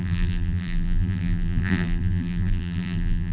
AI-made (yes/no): yes